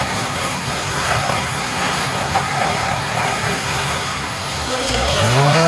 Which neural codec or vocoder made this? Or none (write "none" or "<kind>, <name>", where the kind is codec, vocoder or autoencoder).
codec, SNAC